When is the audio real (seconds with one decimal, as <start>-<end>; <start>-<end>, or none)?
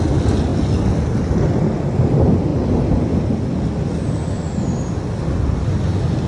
0.0-6.3